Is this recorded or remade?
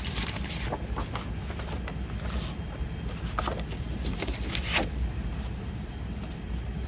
recorded